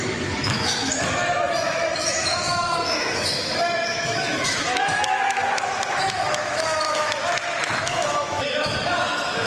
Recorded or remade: remade